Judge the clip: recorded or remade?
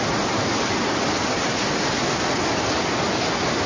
recorded